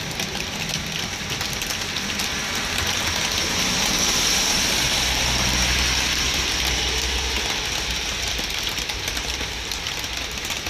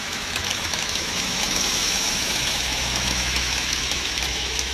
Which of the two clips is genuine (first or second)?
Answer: first